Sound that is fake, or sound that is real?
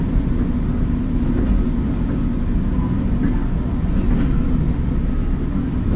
real